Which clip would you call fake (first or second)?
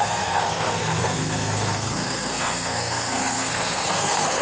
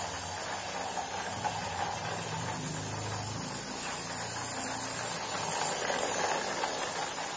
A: first